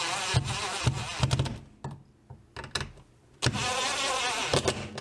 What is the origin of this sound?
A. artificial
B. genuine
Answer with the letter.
B